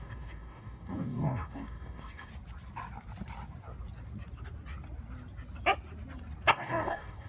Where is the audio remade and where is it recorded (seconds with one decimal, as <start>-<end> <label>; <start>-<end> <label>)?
0.0-2.3 remade; 2.3-6.5 recorded; 6.5-7.3 remade